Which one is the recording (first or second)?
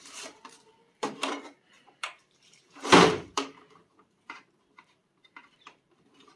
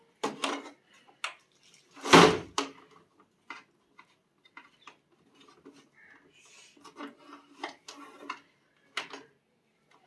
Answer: second